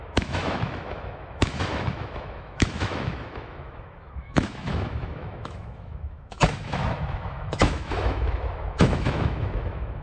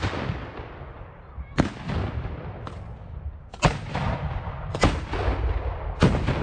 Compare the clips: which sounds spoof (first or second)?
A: first